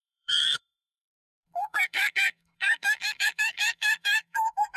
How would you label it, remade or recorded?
remade